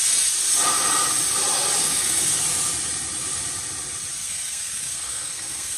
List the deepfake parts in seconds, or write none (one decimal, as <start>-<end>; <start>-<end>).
1.8-2.4; 4.2-5.8

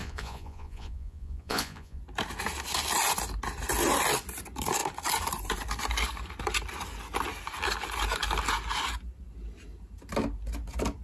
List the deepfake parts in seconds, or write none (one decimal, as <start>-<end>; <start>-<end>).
0.0-2.0

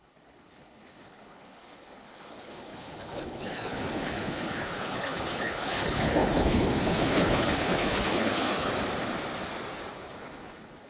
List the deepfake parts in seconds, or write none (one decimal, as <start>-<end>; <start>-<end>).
0.0-8.7; 9.9-10.9

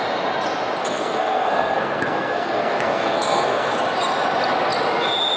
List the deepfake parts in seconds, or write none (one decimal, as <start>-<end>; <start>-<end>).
0.8-3.8

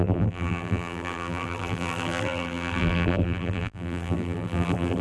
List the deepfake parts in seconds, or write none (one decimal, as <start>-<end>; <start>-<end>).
0.0-5.0

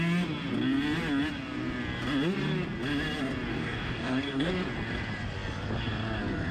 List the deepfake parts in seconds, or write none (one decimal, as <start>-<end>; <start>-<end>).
3.5-4.5

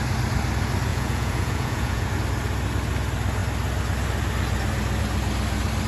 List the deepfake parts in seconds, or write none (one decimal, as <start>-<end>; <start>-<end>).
0.9-2.1

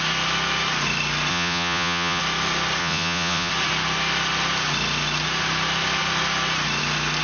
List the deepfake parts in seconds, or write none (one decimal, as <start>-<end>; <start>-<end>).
1.3-2.2; 2.8-3.5